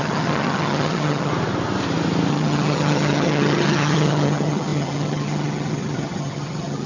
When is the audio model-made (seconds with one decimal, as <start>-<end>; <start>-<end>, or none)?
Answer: 0.0-1.3; 2.3-6.9